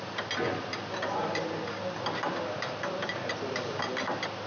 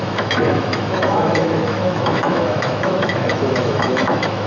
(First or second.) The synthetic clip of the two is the second